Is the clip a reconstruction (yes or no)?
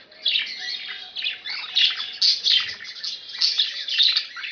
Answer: no